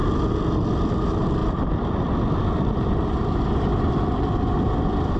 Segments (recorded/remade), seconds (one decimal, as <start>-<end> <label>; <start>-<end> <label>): 0.0-1.4 recorded; 1.4-4.2 remade; 4.2-5.2 recorded